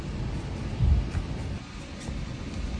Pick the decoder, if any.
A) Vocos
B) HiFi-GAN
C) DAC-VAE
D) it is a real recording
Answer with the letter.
D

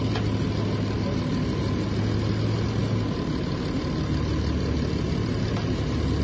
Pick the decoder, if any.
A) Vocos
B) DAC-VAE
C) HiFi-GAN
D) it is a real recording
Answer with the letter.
D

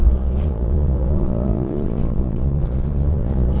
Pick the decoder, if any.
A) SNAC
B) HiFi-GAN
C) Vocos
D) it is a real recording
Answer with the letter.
C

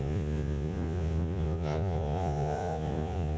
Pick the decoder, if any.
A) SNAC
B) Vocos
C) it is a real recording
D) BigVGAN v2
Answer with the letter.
B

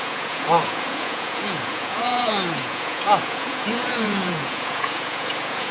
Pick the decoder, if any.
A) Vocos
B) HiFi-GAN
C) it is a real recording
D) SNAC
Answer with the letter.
A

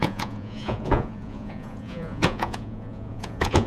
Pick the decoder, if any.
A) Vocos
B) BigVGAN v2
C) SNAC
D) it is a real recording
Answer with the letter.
A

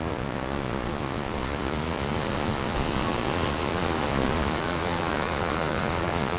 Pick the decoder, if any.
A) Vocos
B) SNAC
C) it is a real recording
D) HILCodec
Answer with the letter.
A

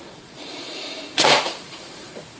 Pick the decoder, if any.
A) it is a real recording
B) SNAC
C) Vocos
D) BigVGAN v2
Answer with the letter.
C